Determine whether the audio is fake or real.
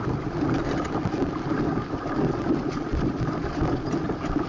real